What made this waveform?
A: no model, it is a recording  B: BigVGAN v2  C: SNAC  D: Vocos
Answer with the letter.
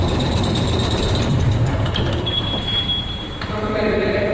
B